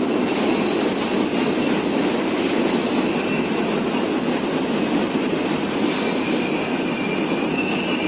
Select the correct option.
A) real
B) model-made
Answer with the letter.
A